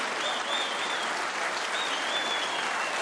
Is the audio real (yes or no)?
yes